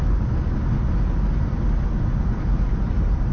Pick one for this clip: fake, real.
real